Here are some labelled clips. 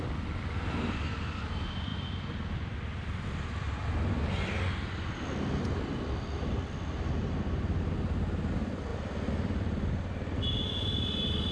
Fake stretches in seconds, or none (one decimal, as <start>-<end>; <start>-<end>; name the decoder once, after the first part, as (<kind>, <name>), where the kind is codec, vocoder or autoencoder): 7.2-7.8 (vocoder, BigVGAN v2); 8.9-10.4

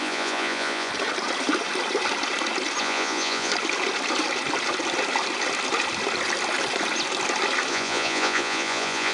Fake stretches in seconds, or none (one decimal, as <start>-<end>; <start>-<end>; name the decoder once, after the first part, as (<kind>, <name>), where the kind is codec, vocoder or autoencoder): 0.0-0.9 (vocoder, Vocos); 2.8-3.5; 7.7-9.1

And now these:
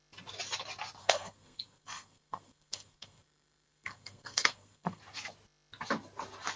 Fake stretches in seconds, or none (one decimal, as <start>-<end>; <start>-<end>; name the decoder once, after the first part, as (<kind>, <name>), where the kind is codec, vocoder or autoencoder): 1.0-5.0 (codec, SNAC)